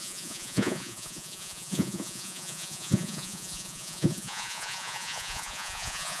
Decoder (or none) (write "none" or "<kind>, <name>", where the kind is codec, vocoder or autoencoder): vocoder, Vocos